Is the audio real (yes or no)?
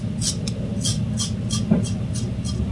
yes